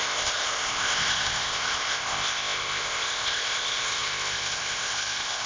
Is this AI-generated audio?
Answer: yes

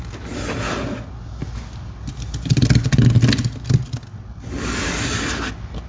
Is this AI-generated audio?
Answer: no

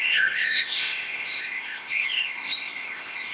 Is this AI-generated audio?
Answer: yes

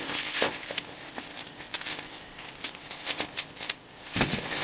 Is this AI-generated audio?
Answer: yes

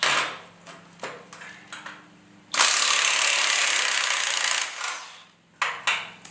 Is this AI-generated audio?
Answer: no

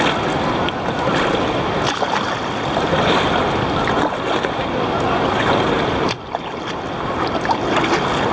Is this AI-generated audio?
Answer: no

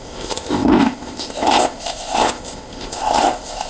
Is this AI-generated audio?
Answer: yes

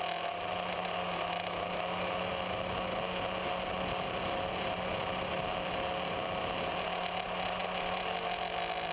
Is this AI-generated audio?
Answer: no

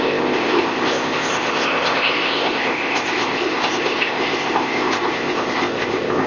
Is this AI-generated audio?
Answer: yes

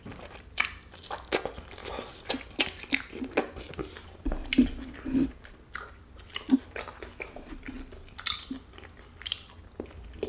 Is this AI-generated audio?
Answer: no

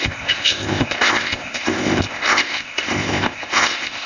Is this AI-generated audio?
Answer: yes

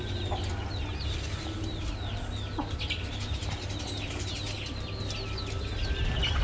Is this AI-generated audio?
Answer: no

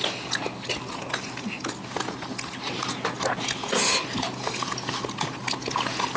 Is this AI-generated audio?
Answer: no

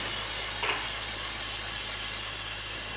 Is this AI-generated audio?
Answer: no